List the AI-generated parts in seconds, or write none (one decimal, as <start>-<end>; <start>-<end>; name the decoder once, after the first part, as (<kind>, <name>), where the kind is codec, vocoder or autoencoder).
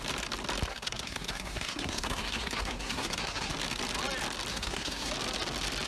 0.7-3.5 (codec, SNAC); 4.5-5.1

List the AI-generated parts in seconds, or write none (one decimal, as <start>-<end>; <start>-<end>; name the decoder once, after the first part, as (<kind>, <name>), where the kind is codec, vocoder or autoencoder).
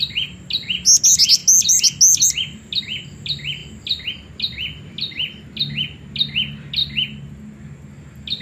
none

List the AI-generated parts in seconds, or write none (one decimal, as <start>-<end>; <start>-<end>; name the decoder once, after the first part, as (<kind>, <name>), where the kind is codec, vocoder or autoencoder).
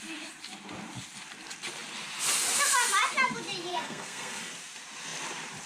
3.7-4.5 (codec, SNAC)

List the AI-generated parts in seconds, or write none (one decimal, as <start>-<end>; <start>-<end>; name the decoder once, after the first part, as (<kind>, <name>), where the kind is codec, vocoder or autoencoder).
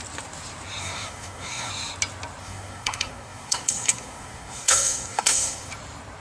0.8-1.7 (codec, SNAC); 2.4-5.7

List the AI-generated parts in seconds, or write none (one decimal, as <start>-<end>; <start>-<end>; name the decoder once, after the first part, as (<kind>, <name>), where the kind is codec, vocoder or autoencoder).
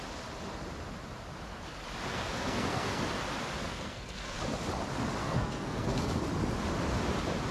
2.1-3.0 (codec, SNAC); 3.6-4.4; 5.2-6.2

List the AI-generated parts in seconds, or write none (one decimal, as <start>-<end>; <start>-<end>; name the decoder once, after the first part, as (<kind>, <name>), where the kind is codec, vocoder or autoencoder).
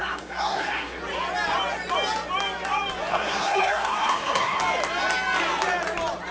0.0-1.0 (codec, SNAC); 3.1-4.6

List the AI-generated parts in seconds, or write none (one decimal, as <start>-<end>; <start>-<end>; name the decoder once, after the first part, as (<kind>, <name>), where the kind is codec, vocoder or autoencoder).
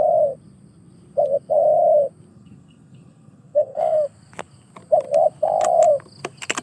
2.3-3.8 (codec, SNAC)